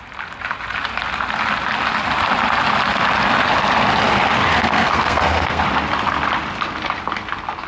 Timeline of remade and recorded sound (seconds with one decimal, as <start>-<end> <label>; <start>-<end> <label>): 0.0-4.5 recorded; 4.5-5.6 remade; 5.6-7.7 recorded

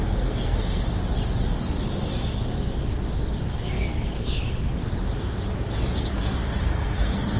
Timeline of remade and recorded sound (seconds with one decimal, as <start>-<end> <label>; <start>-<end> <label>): 0.0-0.9 remade; 0.9-3.5 recorded; 3.5-4.8 remade; 4.8-6.0 recorded; 6.0-7.4 remade

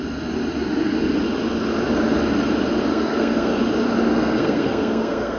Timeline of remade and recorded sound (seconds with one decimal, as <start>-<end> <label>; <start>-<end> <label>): 0.0-2.9 recorded; 2.9-3.6 remade; 3.6-4.1 recorded; 4.1-5.4 remade

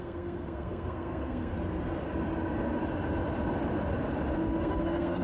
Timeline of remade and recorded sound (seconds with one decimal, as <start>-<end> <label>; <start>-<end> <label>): 0.0-1.5 remade; 1.5-4.6 recorded; 4.6-5.2 remade

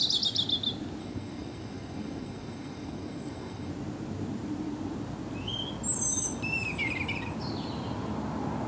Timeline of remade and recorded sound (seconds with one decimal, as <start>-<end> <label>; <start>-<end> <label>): 0.0-1.0 recorded; 1.0-3.7 remade; 3.7-8.7 recorded